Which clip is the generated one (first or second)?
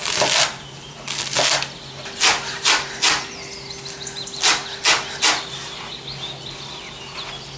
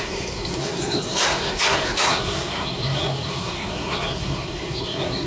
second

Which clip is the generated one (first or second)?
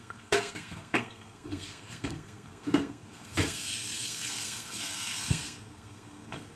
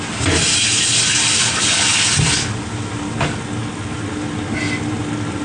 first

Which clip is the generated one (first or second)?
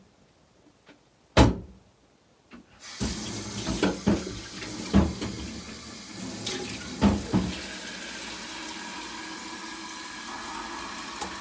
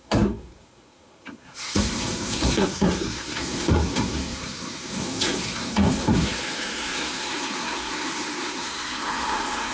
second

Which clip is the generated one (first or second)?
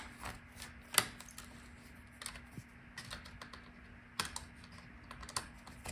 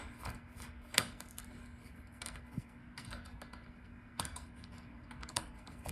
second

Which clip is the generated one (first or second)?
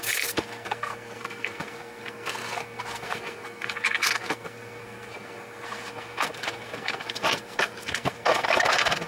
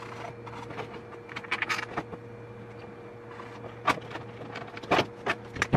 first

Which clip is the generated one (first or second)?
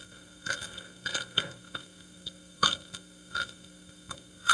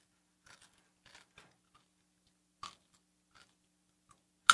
first